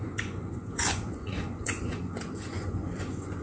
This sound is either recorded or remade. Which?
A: remade